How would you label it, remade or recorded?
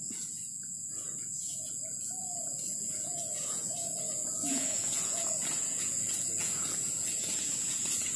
remade